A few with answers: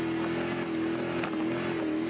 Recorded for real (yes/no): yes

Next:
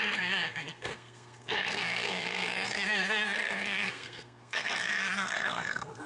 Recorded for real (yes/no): no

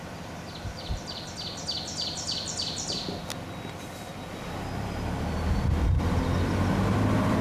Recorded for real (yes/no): yes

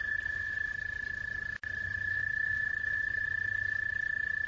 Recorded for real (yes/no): yes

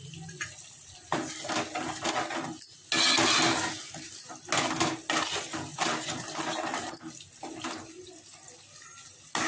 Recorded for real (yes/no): yes